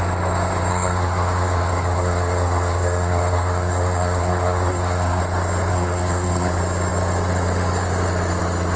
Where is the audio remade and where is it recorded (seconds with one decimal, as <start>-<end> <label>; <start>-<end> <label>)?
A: 0.0-0.7 recorded; 0.7-5.2 remade; 5.2-5.7 recorded; 5.7-6.5 remade; 6.5-8.8 recorded